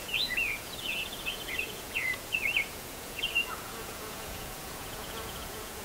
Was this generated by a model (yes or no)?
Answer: yes